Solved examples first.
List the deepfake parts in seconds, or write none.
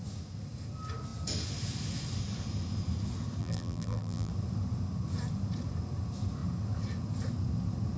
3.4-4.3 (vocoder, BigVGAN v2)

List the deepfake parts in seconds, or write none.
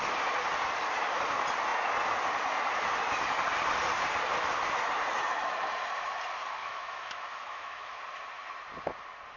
6.6-8.0 (autoencoder, DAC-VAE)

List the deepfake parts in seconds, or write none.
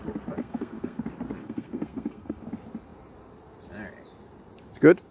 0.4-1.0 (codec, SNAC); 1.4-2.4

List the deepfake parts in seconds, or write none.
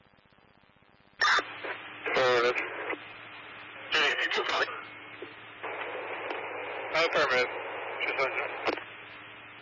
4.1-4.6 (codec, SNAC)